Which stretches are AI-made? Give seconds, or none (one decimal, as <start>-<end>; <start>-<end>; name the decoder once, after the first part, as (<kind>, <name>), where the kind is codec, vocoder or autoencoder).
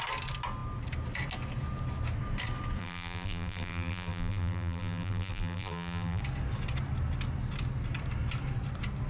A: 2.8-6.2 (vocoder, BigVGAN v2)